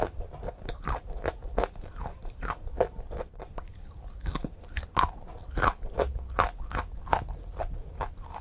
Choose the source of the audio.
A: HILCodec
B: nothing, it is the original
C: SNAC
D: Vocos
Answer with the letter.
B